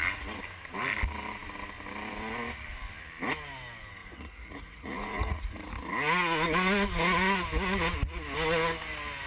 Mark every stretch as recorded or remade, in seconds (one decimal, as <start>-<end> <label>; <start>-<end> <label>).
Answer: 0.0-4.0 recorded; 4.0-5.7 remade; 5.7-9.3 recorded